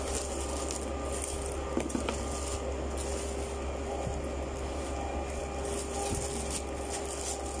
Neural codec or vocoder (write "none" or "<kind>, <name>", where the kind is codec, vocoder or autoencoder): none